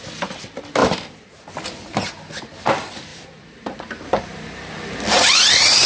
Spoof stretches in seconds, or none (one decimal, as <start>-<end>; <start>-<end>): 0.8-1.5; 3.1-4.2; 5.2-5.9

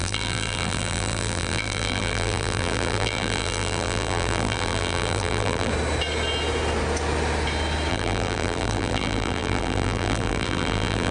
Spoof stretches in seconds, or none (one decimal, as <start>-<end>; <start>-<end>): 0.0-5.7; 7.9-11.1

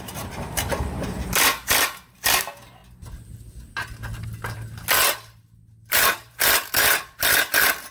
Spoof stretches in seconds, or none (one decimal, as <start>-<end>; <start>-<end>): 0.0-2.8; 5.9-7.9

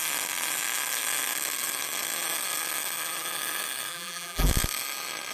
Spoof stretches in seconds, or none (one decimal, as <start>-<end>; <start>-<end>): 3.9-4.5

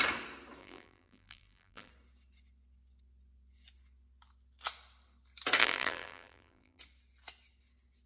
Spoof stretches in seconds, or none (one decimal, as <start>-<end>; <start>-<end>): 0.6-1.9; 5.6-6.8

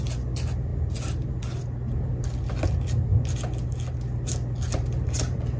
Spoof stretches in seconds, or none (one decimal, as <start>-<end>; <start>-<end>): none

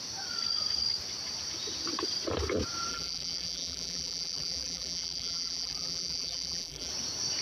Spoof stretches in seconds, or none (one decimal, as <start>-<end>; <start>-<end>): 2.9-6.9